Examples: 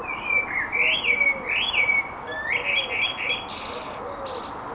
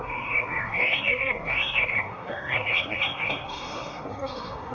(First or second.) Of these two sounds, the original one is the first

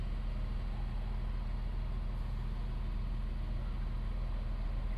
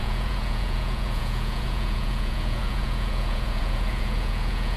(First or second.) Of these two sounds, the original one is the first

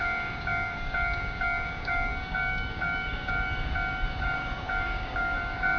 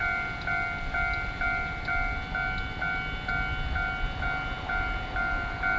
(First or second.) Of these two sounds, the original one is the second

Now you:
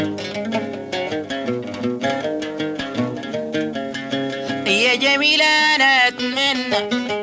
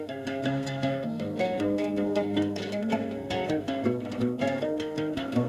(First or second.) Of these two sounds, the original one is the first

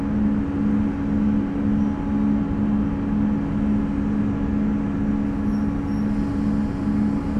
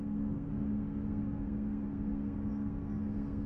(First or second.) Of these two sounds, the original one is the first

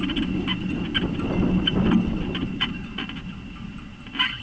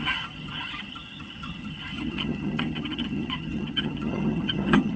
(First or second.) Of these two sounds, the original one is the first